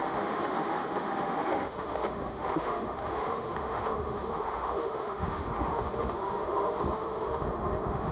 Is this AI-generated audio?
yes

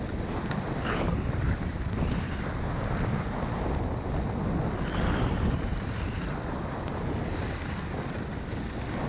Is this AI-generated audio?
no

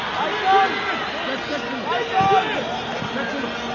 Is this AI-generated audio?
no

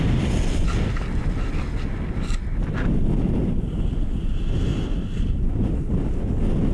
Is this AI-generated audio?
no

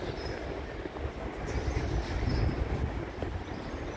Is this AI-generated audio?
no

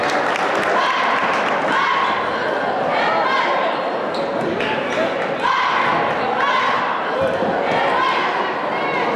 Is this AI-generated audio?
no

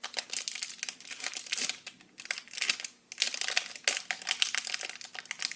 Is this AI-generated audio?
no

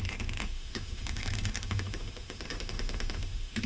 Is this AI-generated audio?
yes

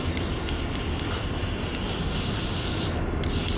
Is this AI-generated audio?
no